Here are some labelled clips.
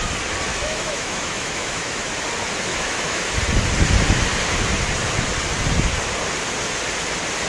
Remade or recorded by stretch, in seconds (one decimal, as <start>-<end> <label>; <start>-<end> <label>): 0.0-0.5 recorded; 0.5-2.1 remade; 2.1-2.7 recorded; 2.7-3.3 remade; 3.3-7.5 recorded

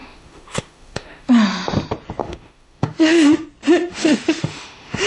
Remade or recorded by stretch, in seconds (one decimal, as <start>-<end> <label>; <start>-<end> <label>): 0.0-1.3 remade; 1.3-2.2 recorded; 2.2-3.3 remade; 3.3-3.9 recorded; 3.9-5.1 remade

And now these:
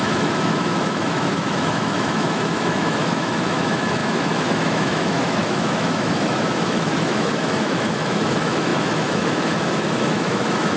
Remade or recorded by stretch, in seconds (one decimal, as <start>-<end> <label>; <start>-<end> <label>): 0.0-10.8 remade

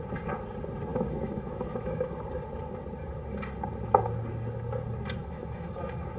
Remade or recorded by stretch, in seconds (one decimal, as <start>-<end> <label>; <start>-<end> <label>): 0.0-0.9 recorded; 0.9-2.2 remade; 2.2-5.2 recorded; 5.2-5.8 remade; 5.8-6.2 recorded

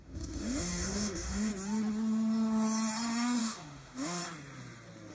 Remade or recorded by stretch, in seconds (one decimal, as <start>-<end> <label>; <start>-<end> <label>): 0.0-1.5 remade; 1.5-3.4 recorded; 3.4-4.2 remade; 4.2-5.1 recorded

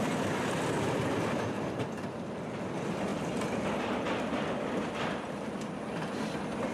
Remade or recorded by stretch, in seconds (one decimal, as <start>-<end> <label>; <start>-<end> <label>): 0.0-6.7 recorded